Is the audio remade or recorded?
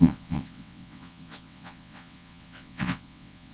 remade